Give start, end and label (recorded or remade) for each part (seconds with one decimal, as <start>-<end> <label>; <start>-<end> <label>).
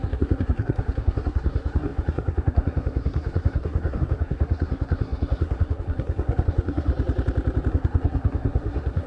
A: 0.0-6.9 remade; 6.9-7.7 recorded; 7.7-9.1 remade